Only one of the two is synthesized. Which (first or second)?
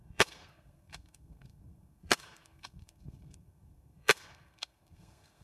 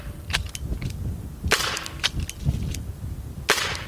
first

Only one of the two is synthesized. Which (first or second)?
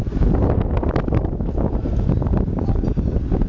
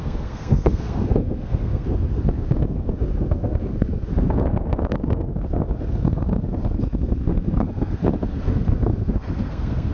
second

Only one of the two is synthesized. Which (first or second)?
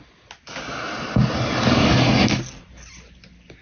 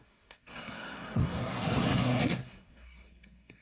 second